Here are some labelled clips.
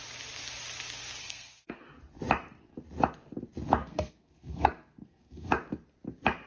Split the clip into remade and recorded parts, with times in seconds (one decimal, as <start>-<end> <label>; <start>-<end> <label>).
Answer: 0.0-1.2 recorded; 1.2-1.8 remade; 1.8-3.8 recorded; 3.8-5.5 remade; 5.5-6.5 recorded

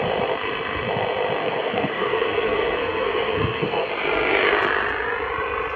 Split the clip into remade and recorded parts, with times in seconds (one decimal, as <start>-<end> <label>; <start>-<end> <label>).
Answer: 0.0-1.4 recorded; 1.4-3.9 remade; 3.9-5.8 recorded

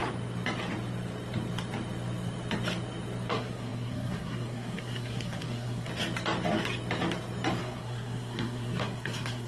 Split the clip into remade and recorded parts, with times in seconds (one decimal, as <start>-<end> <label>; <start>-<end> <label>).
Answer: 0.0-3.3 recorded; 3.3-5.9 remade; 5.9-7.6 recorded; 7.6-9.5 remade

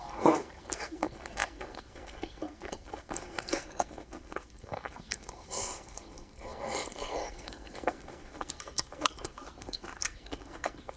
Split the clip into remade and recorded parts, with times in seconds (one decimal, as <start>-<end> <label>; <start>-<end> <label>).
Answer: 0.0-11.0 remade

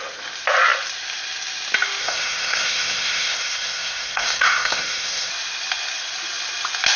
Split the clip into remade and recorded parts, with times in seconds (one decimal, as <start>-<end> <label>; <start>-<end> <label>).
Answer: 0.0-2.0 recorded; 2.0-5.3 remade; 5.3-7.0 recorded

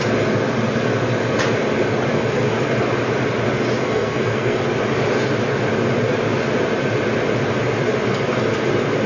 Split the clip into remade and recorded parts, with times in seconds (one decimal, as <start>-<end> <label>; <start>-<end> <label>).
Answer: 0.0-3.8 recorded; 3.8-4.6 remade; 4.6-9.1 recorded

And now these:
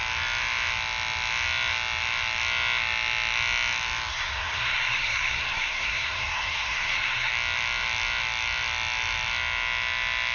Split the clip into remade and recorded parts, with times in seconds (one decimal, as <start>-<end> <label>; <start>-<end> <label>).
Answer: 0.0-4.1 recorded; 4.1-7.3 remade; 7.3-10.3 recorded

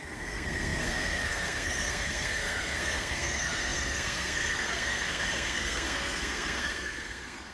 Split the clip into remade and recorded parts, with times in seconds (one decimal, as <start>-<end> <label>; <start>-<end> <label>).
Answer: 0.0-7.5 remade